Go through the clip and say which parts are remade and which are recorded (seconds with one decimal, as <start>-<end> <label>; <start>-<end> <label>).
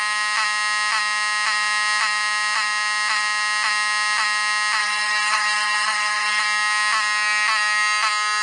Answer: 0.0-4.8 recorded; 4.8-6.4 remade; 6.4-8.4 recorded